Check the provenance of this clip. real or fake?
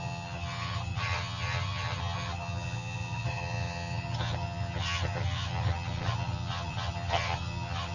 fake